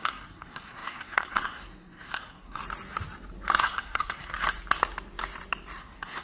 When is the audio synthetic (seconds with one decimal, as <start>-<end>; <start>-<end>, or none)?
0.0-2.6; 3.6-4.3; 5.8-6.2